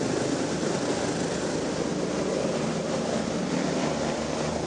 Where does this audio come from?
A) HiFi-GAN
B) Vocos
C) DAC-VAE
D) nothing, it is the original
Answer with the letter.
D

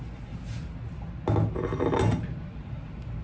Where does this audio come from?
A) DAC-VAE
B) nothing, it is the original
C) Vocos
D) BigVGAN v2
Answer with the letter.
B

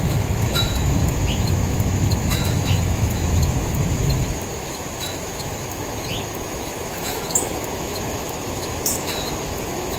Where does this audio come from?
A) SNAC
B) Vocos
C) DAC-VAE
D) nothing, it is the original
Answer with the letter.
C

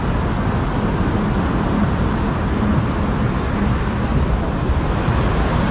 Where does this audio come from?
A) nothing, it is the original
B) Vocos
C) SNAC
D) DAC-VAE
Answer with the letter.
A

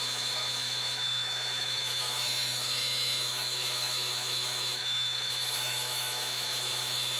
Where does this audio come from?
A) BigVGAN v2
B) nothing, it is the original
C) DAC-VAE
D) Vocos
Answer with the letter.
C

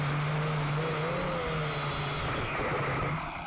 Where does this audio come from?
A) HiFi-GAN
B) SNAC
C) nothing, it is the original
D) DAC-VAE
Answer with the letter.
C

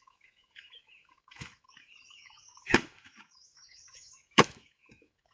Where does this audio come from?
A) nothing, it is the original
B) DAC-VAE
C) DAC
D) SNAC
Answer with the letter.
B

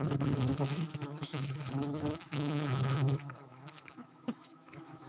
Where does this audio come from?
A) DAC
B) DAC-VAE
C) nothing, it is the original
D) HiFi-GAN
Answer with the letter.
B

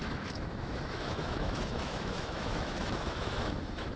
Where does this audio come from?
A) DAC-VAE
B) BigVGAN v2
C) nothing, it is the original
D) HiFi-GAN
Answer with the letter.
A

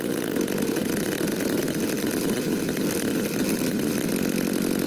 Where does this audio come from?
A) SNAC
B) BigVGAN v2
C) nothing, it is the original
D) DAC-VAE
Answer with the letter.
C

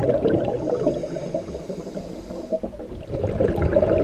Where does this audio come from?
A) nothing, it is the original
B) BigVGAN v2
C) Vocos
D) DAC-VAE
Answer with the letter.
A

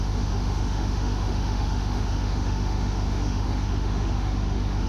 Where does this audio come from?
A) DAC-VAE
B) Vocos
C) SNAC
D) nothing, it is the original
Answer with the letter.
A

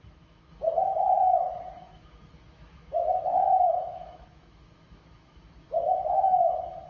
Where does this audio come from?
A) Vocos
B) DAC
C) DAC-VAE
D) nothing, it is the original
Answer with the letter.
C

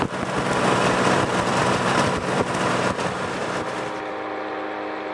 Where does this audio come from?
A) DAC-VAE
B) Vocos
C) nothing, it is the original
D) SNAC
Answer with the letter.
C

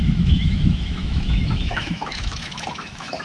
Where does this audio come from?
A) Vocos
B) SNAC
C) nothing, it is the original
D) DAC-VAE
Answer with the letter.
D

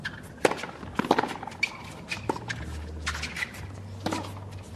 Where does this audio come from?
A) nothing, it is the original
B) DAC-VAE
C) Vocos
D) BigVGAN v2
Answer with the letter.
A